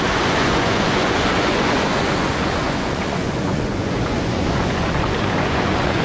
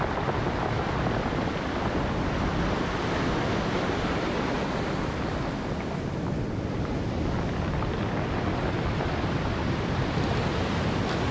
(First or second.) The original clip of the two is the second